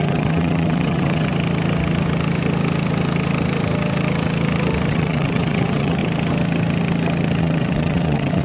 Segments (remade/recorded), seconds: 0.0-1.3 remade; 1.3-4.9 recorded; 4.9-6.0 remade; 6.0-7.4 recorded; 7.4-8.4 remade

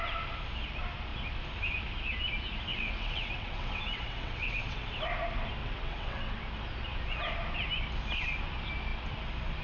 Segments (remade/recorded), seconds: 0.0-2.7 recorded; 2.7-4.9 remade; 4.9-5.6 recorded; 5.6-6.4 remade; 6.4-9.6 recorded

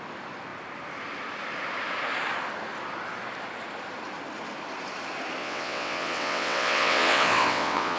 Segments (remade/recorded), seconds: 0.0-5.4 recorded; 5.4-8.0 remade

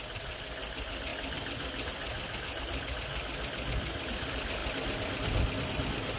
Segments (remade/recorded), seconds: 0.0-6.2 recorded

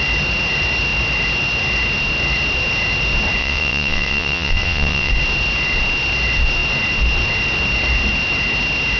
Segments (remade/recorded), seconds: 0.0-3.4 recorded; 3.4-5.1 remade; 5.1-9.0 recorded

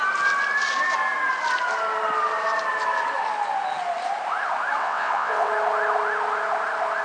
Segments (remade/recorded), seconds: 0.0-4.8 recorded; 4.8-5.5 remade; 5.5-7.0 recorded